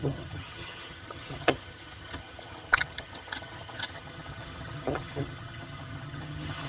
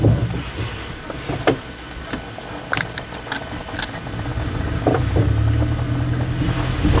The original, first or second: second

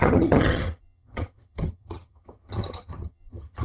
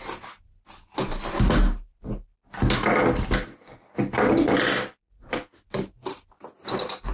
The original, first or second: second